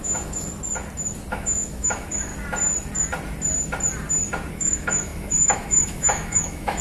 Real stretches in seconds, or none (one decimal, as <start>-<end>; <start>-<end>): 0.5-1.3; 2.3-4.5